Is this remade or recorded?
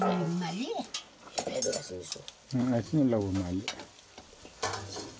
recorded